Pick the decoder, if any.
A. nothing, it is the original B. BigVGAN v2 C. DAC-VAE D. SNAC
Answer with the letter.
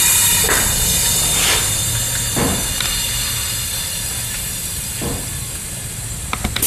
A